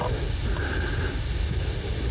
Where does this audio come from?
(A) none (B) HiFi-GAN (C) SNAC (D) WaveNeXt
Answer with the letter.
A